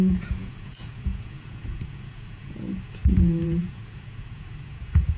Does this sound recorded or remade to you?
remade